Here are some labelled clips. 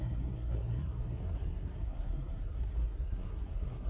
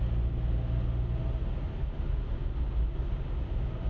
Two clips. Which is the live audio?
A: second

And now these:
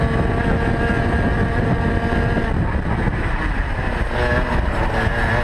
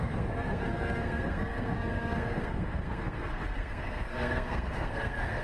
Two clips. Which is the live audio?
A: first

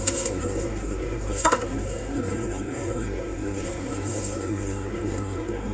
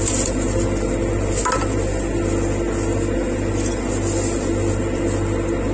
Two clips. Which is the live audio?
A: second